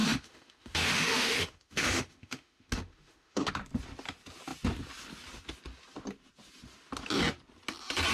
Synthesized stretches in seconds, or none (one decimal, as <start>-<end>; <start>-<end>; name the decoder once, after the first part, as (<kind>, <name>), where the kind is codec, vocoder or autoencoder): 0.0-3.5 (autoencoder, DAC-VAE)